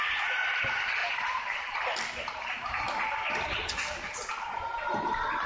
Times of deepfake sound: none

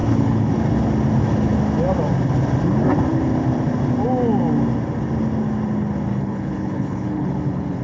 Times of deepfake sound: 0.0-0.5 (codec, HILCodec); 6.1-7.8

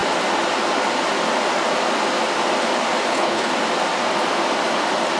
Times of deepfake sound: 3.1-3.5 (codec, HILCodec)

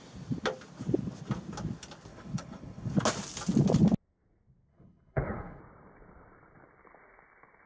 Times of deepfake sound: 2.1-2.9 (codec, HILCodec); 4.7-5.6

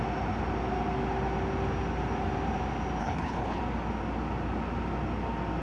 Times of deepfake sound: 3.0-3.6 (codec, HILCodec)

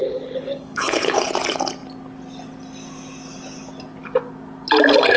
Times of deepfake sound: 0.0-1.3 (codec, HILCodec)